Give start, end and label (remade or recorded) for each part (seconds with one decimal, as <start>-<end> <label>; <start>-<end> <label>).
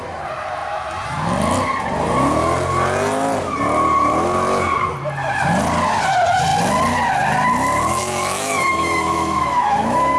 0.0-8.0 recorded; 8.0-10.2 remade